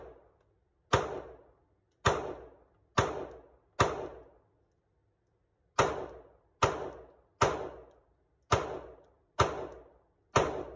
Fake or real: real